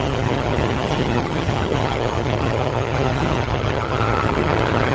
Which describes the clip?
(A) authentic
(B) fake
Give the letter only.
B